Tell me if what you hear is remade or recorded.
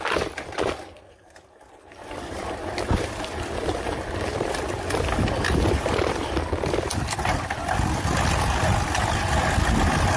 recorded